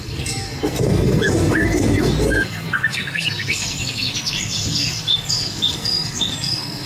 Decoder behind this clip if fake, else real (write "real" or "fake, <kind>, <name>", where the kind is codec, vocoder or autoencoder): fake, codec, SNAC